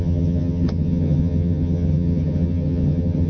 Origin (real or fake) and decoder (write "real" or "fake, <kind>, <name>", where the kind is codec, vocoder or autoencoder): fake, vocoder, HiFi-GAN